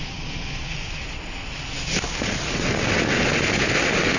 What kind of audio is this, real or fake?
real